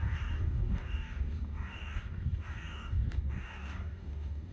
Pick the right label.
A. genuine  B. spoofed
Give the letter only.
B